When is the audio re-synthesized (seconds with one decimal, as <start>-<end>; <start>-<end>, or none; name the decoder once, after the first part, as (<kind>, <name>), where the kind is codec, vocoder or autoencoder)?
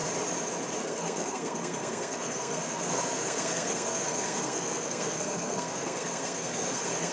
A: 0.8-7.1 (codec, SNAC)